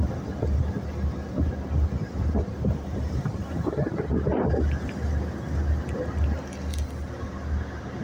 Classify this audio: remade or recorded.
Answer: recorded